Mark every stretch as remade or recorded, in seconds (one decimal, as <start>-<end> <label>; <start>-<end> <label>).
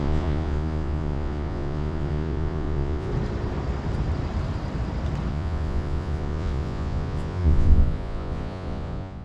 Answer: 0.0-3.1 remade; 3.1-5.3 recorded; 5.3-9.2 remade